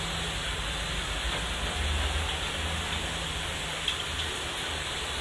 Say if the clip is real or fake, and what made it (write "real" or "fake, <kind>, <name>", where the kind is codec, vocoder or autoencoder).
real